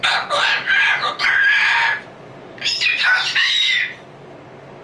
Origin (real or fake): real